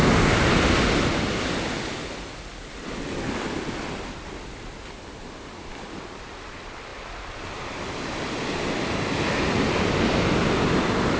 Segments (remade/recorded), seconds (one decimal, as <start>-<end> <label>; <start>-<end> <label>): 0.0-11.2 recorded

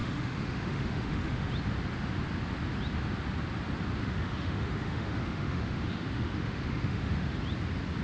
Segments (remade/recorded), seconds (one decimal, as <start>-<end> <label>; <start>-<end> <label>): 0.0-1.5 remade; 1.5-4.0 recorded; 4.0-7.4 remade; 7.4-8.0 recorded